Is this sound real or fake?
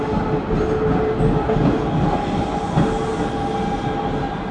real